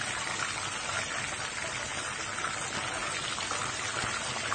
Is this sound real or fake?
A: real